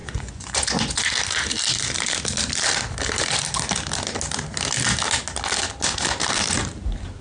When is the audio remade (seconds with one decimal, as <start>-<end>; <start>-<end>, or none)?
0.0-1.0